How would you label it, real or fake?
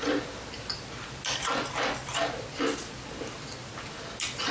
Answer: real